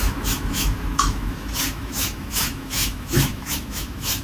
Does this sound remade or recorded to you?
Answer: remade